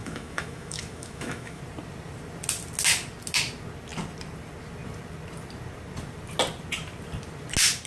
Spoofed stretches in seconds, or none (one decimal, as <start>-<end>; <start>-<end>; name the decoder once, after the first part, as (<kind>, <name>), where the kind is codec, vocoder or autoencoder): 0.0-1.6 (autoencoder, DAC-VAE)